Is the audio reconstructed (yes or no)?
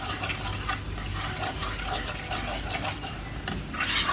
no